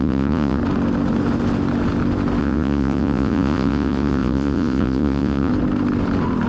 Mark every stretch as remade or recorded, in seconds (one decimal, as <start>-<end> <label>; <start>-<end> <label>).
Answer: 0.0-0.6 remade; 0.6-2.4 recorded; 2.4-5.5 remade; 5.5-6.5 recorded